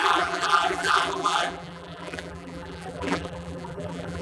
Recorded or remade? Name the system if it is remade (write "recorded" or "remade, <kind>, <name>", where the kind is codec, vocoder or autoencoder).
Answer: remade, vocoder, BigVGAN v2